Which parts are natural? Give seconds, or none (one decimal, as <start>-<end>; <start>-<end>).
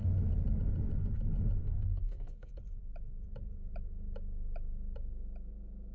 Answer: 0.0-1.6; 2.6-5.9